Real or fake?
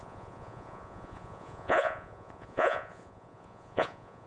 fake